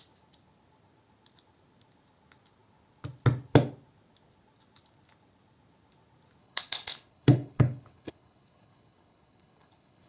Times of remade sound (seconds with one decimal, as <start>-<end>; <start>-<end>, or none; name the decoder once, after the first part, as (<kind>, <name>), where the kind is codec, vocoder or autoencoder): 6.4-10.1 (codec, HILCodec)